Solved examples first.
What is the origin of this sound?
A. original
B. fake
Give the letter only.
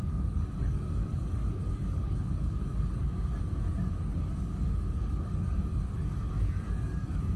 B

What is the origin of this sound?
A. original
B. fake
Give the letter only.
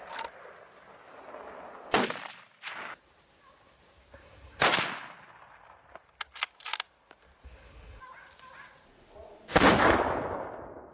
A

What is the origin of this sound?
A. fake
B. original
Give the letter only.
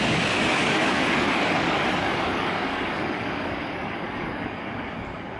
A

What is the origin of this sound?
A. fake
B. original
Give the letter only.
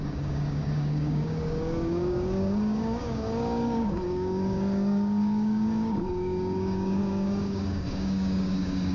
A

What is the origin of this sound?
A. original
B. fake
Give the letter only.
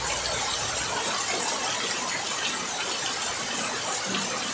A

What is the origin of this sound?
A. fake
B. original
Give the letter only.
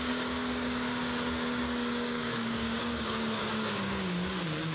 A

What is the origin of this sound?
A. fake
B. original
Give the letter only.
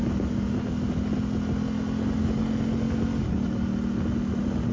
B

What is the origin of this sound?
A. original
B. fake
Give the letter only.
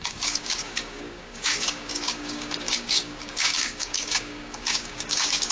B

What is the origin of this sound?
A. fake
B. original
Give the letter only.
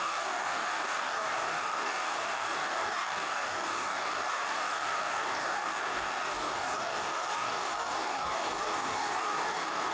A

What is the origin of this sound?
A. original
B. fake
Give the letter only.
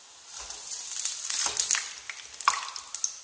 A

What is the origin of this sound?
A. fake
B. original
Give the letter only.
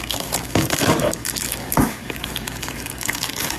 A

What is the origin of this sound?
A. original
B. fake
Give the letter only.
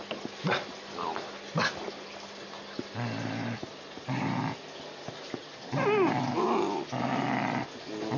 A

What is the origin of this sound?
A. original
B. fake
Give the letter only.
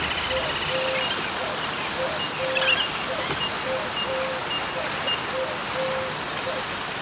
A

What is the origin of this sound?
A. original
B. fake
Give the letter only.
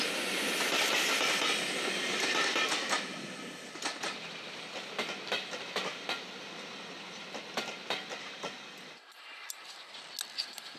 A